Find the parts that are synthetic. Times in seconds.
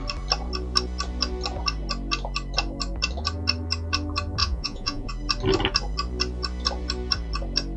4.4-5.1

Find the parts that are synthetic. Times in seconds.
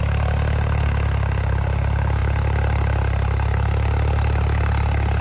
none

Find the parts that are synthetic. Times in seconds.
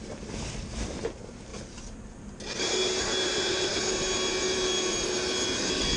none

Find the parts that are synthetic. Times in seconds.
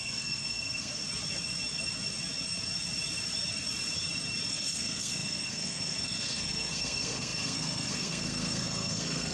0.0-1.0; 4.5-9.3